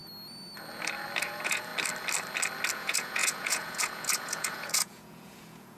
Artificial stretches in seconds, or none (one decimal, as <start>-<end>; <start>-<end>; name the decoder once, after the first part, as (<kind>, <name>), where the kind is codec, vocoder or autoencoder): 1.2-1.7 (vocoder, Vocos); 2.7-5.8